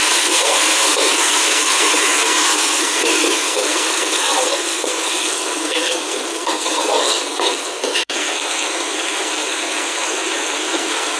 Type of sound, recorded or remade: remade